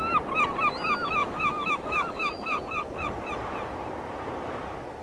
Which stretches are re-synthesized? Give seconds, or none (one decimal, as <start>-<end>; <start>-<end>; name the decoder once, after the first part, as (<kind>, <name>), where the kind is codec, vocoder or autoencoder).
1.2-2.6 (autoencoder, DAC-VAE)